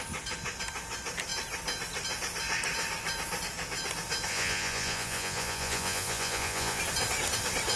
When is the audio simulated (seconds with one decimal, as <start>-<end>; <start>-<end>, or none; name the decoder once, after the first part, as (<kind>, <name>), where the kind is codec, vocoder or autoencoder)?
4.3-6.8 (vocoder, Vocos)